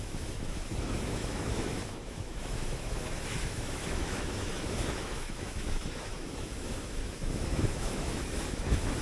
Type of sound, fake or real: fake